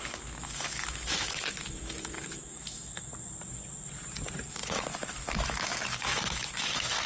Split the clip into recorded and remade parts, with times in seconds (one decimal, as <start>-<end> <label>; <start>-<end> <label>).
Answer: 0.0-3.1 remade; 3.1-4.5 recorded; 4.5-7.1 remade